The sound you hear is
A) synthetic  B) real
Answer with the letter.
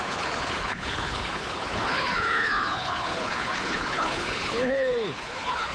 A